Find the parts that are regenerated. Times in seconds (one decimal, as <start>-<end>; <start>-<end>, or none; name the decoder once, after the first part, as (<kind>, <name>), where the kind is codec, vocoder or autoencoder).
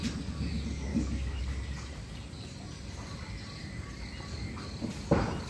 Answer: 0.9-1.4 (codec, DAC)